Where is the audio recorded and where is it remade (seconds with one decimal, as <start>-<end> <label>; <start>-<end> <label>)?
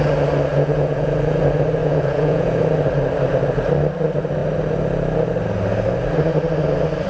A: 0.0-0.5 recorded; 0.5-1.4 remade; 1.4-1.8 recorded; 1.8-2.6 remade; 2.6-7.1 recorded